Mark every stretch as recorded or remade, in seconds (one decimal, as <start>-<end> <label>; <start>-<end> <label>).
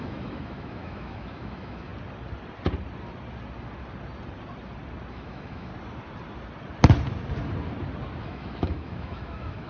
0.0-1.9 remade; 1.9-5.1 recorded; 5.1-5.7 remade; 5.7-8.2 recorded; 8.2-9.7 remade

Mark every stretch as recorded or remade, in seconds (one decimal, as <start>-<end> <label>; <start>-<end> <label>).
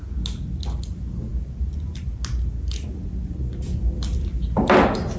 0.0-5.2 recorded